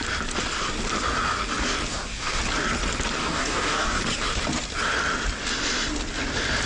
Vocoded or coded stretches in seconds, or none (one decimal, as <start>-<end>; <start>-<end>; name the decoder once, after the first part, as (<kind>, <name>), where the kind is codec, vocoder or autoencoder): 1.9-2.4 (codec, DAC); 3.2-4.0

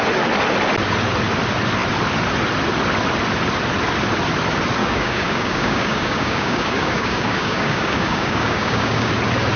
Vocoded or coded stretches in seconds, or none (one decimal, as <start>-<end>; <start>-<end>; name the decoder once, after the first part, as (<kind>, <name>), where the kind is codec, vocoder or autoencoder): 4.8-9.1 (codec, DAC)